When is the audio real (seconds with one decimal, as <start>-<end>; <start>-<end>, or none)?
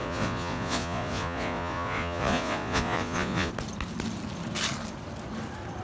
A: 3.5-5.8